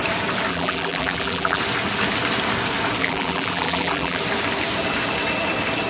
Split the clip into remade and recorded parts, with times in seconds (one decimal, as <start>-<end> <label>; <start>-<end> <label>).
0.0-0.5 recorded; 0.5-1.6 remade; 1.6-3.0 recorded; 3.0-4.2 remade; 4.2-5.9 recorded